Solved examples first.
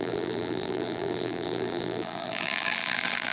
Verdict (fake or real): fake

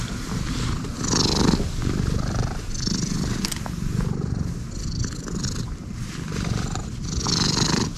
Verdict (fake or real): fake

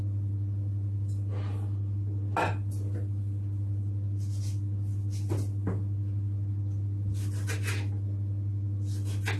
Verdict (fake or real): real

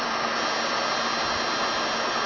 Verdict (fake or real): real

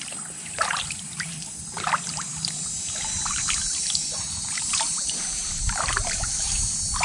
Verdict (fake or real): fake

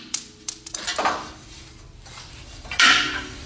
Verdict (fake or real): fake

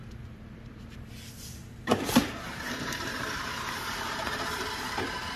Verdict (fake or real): fake